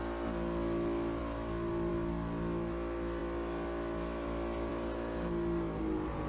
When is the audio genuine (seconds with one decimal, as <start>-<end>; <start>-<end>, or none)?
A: 0.0-6.3